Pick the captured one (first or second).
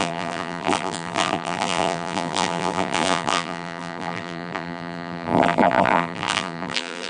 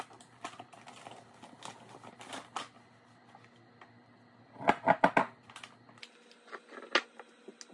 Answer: second